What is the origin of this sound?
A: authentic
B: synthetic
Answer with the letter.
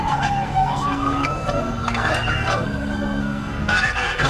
B